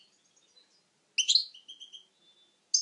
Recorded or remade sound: recorded